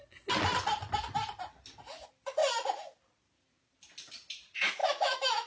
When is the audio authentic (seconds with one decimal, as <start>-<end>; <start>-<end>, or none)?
0.0-4.8